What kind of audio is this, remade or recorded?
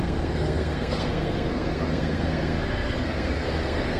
remade